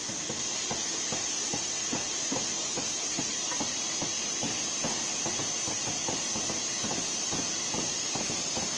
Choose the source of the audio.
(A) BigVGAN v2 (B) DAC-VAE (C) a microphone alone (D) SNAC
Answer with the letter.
A